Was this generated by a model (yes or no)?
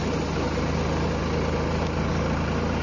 no